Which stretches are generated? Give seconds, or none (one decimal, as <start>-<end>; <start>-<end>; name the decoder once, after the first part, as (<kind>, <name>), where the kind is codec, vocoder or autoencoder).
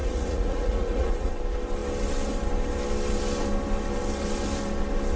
0.0-1.3 (vocoder, Vocos)